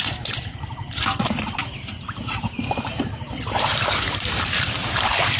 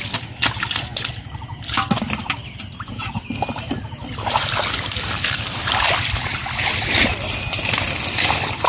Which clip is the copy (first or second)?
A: first